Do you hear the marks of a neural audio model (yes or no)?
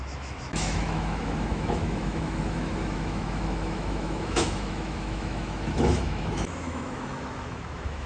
yes